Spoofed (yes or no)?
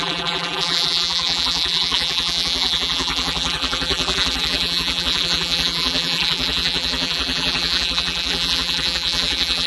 yes